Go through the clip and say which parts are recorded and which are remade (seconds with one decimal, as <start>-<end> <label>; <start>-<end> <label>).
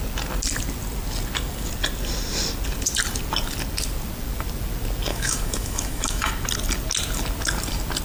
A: 0.0-5.1 recorded; 5.1-6.3 remade; 6.3-8.0 recorded